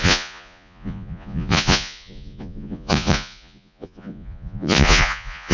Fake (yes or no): yes